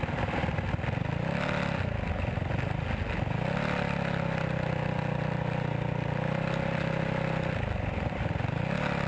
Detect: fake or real real